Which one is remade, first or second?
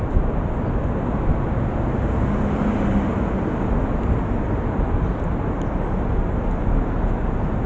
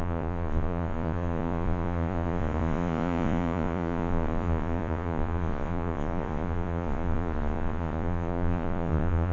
second